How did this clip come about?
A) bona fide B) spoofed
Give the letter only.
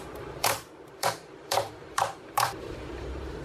B